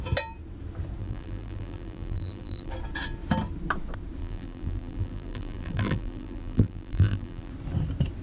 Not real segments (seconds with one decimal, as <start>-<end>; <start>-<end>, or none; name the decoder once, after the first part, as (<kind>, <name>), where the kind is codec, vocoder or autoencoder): 1.0-2.7 (vocoder, BigVGAN v2); 4.2-7.5